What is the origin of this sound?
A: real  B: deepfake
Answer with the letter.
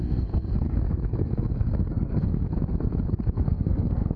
B